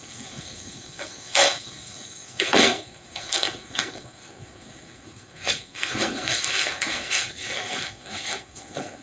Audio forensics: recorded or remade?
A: remade